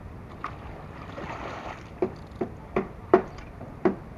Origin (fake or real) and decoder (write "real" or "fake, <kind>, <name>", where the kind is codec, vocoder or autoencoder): real